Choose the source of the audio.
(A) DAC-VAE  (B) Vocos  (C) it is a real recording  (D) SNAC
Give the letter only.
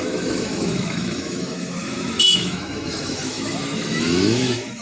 A